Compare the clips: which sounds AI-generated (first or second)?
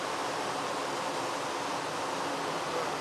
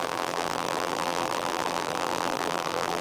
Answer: second